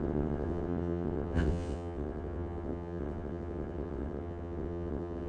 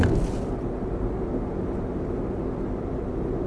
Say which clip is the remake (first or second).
first